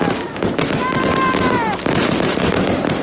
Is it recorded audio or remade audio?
remade